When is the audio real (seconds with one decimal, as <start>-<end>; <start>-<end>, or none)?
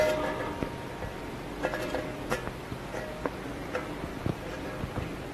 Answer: 0.0-5.3